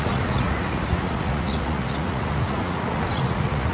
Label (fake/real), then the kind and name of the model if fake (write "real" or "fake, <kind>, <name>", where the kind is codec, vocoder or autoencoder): fake, vocoder, Vocos